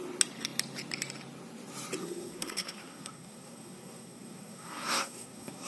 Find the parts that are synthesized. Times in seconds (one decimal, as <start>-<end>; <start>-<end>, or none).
2.0-5.7